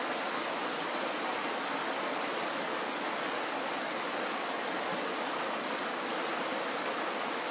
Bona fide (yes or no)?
yes